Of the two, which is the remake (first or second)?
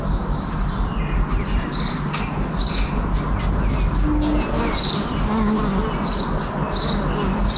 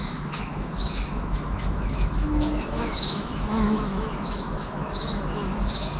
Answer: second